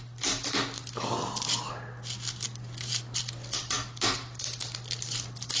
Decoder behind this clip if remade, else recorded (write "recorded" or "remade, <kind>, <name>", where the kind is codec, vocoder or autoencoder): recorded